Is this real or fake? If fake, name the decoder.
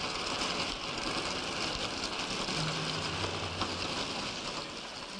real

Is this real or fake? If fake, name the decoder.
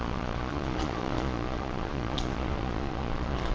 fake, vocoder, Vocos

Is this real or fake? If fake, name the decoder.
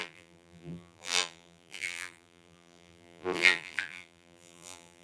fake, vocoder, BigVGAN v2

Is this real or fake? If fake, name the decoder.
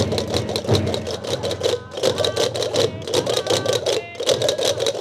real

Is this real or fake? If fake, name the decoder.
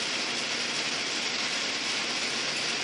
real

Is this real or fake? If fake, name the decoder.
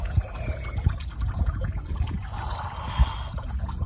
real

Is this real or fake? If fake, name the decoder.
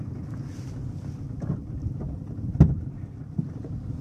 real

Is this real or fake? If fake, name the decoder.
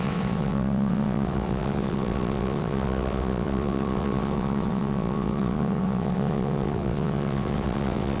fake, vocoder, WaveNeXt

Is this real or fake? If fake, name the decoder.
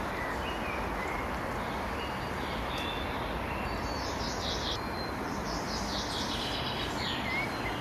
real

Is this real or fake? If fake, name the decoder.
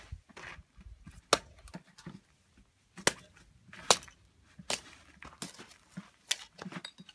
real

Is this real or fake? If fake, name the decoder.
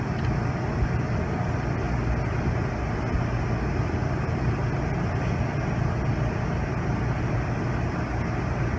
real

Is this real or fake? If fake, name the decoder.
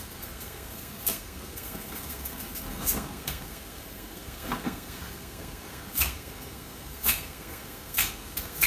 fake, codec, SNAC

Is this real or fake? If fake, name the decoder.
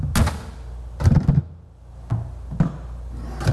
real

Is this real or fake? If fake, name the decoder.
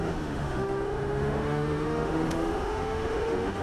fake, autoencoder, DAC-VAE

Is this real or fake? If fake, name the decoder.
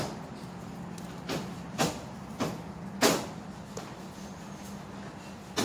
real